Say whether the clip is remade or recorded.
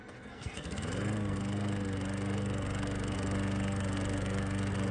remade